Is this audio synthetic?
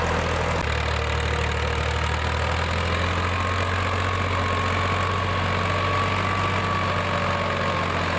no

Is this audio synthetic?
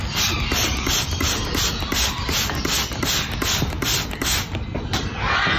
no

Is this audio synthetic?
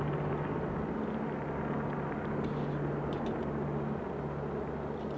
no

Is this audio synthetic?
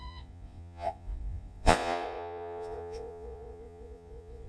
yes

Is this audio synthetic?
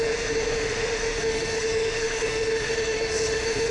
yes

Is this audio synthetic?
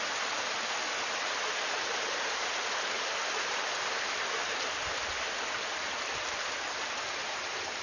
no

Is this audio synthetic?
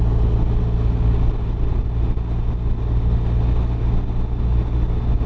no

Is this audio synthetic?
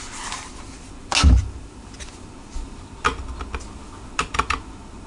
no